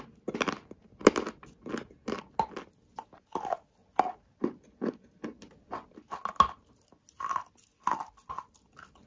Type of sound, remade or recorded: recorded